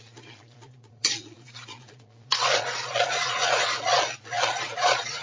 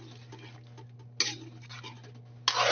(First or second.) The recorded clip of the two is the second